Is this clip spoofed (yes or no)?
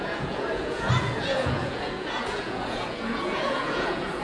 yes